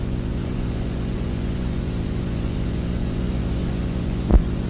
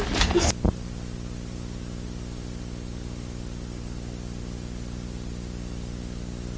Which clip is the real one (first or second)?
second